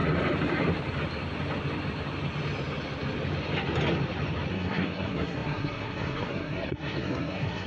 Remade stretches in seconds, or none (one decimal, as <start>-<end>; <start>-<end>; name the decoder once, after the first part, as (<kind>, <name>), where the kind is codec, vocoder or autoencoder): 4.5-7.7 (codec, SNAC)